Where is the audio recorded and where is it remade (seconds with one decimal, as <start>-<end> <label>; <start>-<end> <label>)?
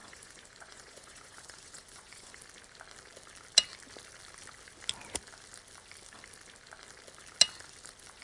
0.0-2.4 remade; 2.4-8.2 recorded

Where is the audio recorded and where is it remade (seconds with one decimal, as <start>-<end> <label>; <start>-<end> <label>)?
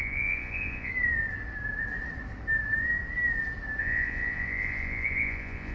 0.0-0.9 remade; 0.9-3.8 recorded; 3.8-5.7 remade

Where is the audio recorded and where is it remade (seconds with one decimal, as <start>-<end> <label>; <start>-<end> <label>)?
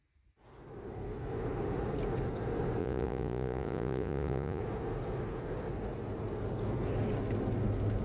0.0-2.8 recorded; 2.8-4.6 remade; 4.6-8.0 recorded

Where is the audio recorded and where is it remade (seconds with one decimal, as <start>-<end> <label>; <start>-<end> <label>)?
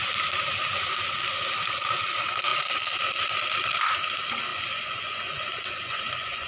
0.0-4.5 recorded; 4.5-6.5 remade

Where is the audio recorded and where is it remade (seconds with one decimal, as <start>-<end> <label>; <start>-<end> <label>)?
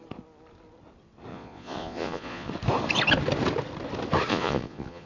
0.0-1.3 recorded; 1.3-2.5 remade; 2.5-4.3 recorded; 4.3-5.1 remade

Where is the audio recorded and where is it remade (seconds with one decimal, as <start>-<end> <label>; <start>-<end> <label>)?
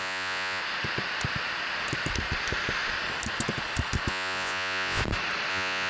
0.0-0.6 remade; 0.6-4.1 recorded; 4.1-5.0 remade; 5.0-5.5 recorded; 5.5-5.9 remade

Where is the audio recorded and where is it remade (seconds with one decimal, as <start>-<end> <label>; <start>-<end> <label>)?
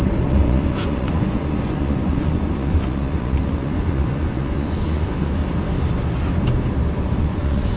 0.0-5.4 remade; 5.4-7.2 recorded; 7.2-7.8 remade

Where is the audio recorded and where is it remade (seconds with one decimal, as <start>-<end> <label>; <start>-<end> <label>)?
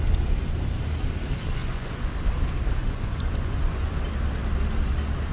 0.0-1.6 recorded; 1.6-2.1 remade; 2.1-2.8 recorded; 2.8-4.0 remade; 4.0-5.3 recorded